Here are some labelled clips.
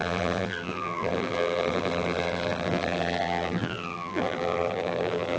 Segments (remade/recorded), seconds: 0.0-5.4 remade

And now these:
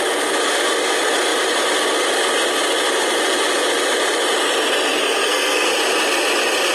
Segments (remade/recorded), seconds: 0.0-4.9 recorded; 4.9-5.7 remade; 5.7-6.7 recorded